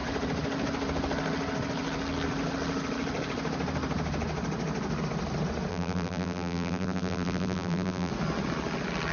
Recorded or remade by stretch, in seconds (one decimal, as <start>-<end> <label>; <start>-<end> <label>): 0.0-5.7 recorded; 5.7-8.1 remade; 8.1-9.1 recorded